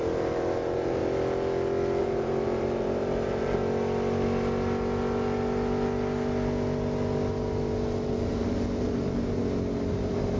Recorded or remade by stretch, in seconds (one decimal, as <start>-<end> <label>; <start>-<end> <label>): 0.0-1.0 remade; 1.0-2.0 recorded; 2.0-3.6 remade; 3.6-8.1 recorded; 8.1-9.4 remade; 9.4-9.9 recorded; 9.9-10.4 remade